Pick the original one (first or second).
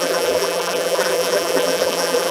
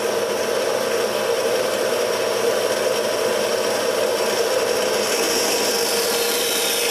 second